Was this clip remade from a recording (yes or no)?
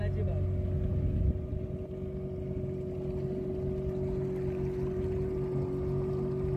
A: no